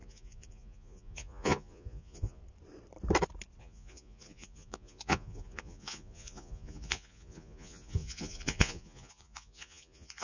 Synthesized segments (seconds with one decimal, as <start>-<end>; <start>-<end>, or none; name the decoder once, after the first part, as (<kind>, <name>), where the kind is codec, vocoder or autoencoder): 0.0-2.4 (vocoder, Vocos); 3.6-10.2

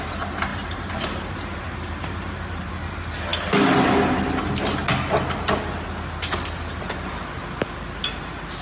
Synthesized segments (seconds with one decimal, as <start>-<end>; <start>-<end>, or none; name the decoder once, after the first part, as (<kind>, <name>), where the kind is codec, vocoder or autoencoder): 0.5-2.7 (vocoder, BigVGAN v2)

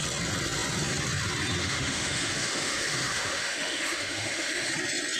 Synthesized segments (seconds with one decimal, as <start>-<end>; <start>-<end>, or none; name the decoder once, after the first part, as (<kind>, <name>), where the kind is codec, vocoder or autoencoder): 1.6-4.7 (autoencoder, DAC-VAE)

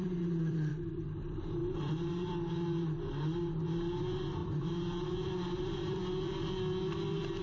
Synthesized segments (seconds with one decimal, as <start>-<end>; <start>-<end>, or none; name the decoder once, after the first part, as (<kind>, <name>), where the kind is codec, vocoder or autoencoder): 0.0-0.7 (vocoder, BigVGAN v2); 1.6-2.4; 4.4-6.0

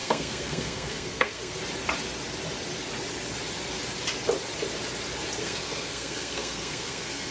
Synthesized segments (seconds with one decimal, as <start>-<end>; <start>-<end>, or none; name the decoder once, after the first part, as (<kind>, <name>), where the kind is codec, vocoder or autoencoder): 0.0-1.6 (codec, SNAC); 5.4-7.3

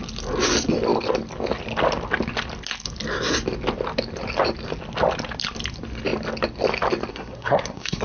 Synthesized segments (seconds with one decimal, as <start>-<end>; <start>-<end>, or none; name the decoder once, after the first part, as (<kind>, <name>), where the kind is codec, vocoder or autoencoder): 7.1-8.0 (codec, SNAC)

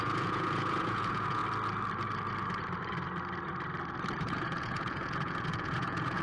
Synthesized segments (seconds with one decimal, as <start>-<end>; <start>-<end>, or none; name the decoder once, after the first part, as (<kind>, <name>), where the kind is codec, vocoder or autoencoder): 0.0-1.4 (vocoder, Vocos); 4.2-6.2

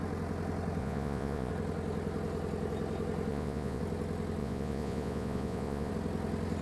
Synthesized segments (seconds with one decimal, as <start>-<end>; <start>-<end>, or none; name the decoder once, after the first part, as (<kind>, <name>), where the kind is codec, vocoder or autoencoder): 0.8-1.5 (vocoder, Vocos); 3.3-3.8; 4.4-5.9